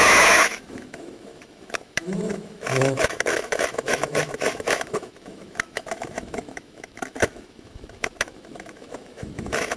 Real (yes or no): no